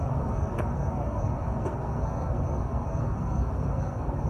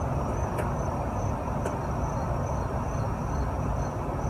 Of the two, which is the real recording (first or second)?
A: second